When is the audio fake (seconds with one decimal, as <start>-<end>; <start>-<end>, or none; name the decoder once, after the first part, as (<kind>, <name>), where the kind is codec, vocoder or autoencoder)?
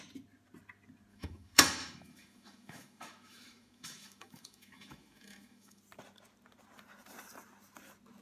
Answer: 1.1-5.8 (autoencoder, DAC-VAE)